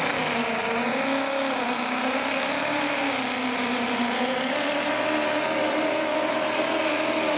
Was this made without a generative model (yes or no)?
yes